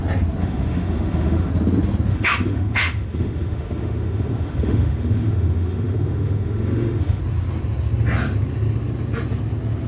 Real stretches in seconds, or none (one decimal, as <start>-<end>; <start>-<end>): 0.0-0.4; 1.5-2.1; 7.2-9.9